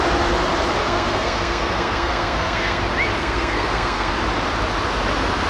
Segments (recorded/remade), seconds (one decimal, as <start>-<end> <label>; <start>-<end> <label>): 0.0-0.8 recorded; 0.8-2.8 remade; 2.8-3.2 recorded; 3.2-4.1 remade; 4.1-5.5 recorded